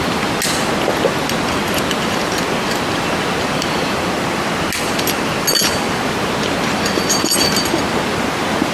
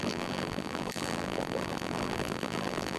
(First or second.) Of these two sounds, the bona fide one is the first